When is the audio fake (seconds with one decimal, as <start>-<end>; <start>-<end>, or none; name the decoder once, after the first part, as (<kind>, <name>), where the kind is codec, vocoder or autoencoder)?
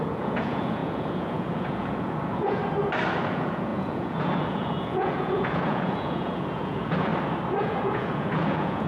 0.0-2.6 (vocoder, Vocos); 3.3-7.1; 7.6-8.9